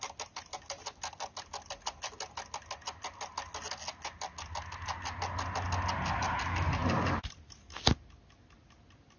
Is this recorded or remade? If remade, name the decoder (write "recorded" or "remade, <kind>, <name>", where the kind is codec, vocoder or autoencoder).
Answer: recorded